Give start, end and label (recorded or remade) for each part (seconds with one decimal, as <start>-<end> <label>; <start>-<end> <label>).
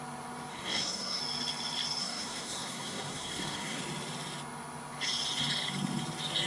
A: 0.0-0.5 recorded; 0.5-1.2 remade; 1.2-2.0 recorded; 2.0-3.8 remade; 3.8-6.5 recorded